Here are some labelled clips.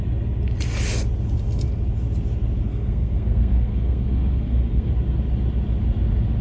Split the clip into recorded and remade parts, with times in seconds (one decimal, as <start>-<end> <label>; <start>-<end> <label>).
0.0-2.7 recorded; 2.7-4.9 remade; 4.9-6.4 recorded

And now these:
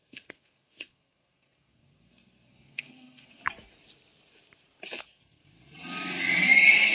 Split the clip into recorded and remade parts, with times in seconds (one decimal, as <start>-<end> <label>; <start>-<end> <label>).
0.0-3.4 remade; 3.4-5.0 recorded; 5.0-5.4 remade; 5.4-6.5 recorded; 6.5-6.9 remade

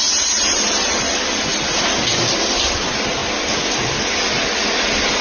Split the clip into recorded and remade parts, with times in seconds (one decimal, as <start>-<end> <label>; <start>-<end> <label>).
0.0-5.2 recorded

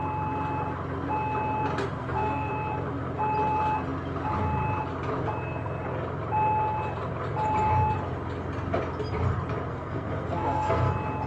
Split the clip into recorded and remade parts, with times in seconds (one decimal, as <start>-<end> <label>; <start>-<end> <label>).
0.0-2.0 recorded; 2.0-2.5 remade; 2.5-9.7 recorded; 9.7-10.9 remade; 10.9-11.3 recorded

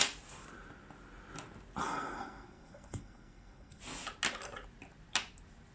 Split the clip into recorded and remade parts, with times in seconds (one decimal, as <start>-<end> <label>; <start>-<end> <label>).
0.0-1.8 recorded; 1.8-3.8 remade; 3.8-5.7 recorded

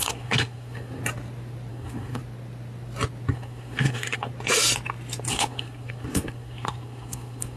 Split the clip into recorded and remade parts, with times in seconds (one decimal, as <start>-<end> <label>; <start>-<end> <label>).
0.0-1.0 remade; 1.0-1.7 recorded; 1.7-2.2 remade; 2.2-3.3 recorded; 3.3-4.3 remade; 4.3-5.3 recorded; 5.3-7.6 remade